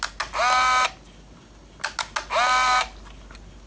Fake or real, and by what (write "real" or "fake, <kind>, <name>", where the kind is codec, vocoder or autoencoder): real